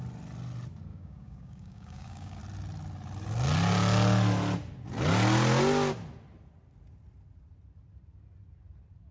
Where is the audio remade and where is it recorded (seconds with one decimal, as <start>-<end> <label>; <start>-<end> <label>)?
0.0-0.9 recorded; 0.9-2.4 remade; 2.4-9.1 recorded